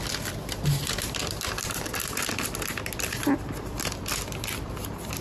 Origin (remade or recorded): remade